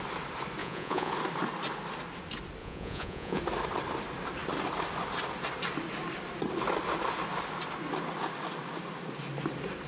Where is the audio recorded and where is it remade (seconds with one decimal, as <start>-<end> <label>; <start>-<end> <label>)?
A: 0.0-0.6 recorded; 0.6-1.1 remade; 1.1-2.6 recorded; 2.6-3.4 remade; 3.4-9.9 recorded